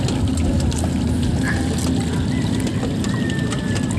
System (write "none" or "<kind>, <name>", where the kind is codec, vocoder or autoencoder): none